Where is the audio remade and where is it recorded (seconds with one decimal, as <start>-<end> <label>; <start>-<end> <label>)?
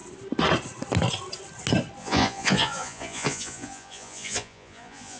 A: 0.0-2.0 recorded; 2.0-5.2 remade